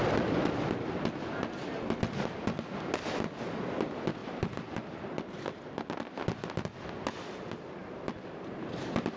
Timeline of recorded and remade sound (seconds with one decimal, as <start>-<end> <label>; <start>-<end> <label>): 0.0-9.2 recorded